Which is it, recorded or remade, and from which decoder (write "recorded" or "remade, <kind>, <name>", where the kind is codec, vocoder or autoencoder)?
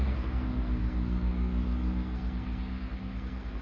remade, codec, SNAC